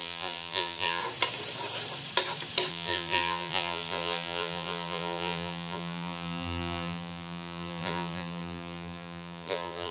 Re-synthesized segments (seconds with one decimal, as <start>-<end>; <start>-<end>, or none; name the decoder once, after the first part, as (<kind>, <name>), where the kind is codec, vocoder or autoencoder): 0.0-1.0 (vocoder, BigVGAN v2); 2.7-9.9